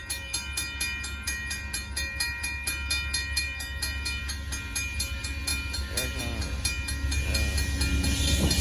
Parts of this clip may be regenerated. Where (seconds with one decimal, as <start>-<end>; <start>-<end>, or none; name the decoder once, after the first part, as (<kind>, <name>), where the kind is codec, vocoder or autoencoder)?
none

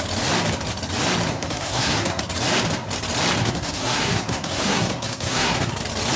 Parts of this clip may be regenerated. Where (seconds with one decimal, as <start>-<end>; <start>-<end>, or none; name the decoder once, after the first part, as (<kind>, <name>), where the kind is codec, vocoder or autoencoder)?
1.3-2.2 (codec, SNAC); 3.4-5.7